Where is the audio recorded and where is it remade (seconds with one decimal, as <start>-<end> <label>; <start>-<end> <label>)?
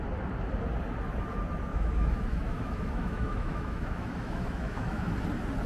0.0-1.7 recorded; 1.7-5.1 remade; 5.1-5.7 recorded